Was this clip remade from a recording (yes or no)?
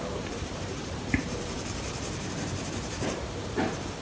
yes